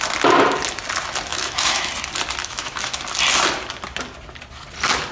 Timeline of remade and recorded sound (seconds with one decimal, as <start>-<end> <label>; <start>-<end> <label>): 0.0-1.3 recorded; 1.3-1.9 remade; 1.9-2.4 recorded; 2.4-3.0 remade; 3.0-5.1 recorded